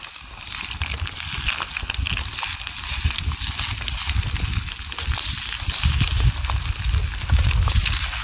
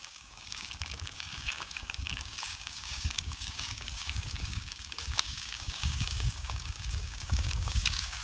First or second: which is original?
first